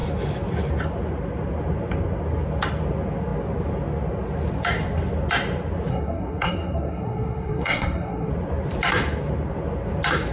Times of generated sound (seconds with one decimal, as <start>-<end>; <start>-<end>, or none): 5.9-8.3